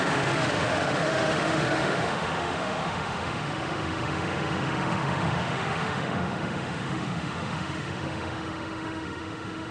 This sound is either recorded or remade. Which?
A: remade